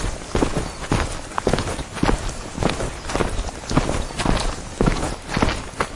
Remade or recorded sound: recorded